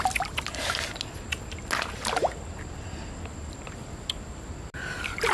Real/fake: real